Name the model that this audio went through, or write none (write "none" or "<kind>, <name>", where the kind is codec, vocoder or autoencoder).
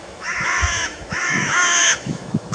autoencoder, DAC-VAE